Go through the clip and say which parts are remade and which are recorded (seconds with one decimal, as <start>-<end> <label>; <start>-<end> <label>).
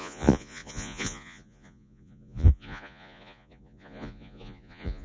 0.0-5.0 remade